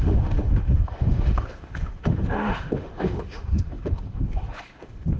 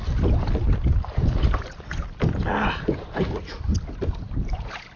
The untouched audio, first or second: second